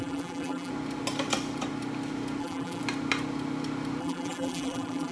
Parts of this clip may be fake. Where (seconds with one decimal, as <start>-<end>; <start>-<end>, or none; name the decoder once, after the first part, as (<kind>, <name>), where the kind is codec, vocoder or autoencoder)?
0.0-0.7 (vocoder, BigVGAN v2); 2.4-2.8; 4.0-5.1